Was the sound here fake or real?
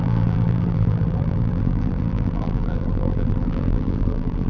fake